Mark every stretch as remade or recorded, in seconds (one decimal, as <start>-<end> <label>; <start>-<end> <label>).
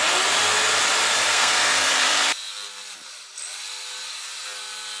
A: 0.0-1.3 recorded; 1.3-1.9 remade; 1.9-5.0 recorded